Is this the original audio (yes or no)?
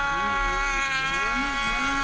yes